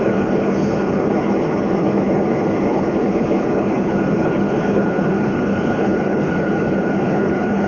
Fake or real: fake